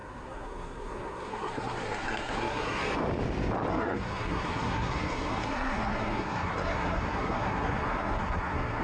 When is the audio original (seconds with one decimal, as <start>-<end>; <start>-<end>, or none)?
2.8-3.7